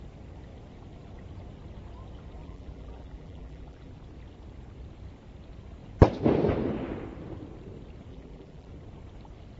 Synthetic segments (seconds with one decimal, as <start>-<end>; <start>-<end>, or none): 2.4-3.9; 8.1-8.7